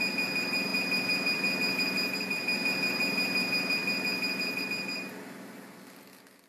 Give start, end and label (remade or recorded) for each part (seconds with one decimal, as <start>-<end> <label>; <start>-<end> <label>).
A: 0.0-6.5 recorded